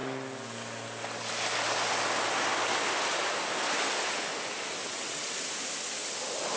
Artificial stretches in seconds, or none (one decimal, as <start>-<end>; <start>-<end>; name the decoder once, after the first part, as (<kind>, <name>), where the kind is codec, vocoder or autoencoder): 4.8-5.5 (vocoder, WaveNeXt)